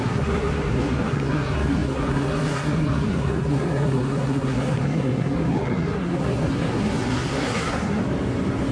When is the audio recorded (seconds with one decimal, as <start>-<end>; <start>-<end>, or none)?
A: 8.0-8.7